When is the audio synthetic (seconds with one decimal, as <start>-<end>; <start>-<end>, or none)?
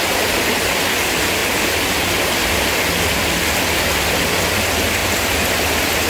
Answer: none